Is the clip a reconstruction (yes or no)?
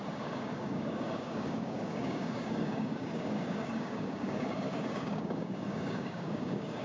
yes